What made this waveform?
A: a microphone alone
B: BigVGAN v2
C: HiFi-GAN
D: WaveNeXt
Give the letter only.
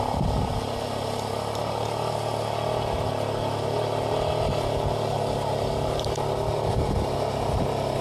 A